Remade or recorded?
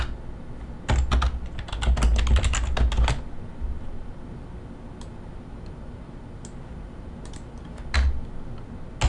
recorded